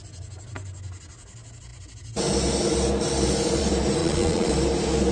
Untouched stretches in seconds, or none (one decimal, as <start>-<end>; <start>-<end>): 0.0-4.0; 4.5-5.1